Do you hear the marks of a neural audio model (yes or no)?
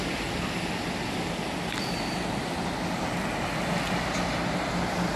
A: no